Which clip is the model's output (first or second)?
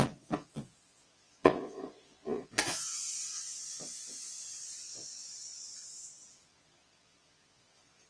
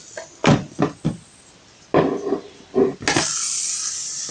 first